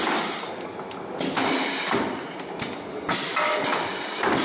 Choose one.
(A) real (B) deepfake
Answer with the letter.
A